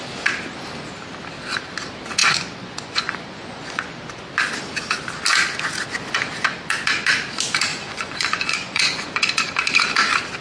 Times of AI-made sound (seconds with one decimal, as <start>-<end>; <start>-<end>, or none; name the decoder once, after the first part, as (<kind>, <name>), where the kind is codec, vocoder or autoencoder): 2.2-4.0 (vocoder, Vocos); 7.7-9.5